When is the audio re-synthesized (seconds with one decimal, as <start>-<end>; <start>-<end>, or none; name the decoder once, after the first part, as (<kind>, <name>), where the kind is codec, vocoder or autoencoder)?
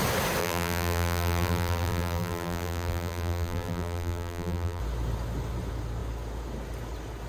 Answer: 0.4-4.8 (vocoder, BigVGAN v2)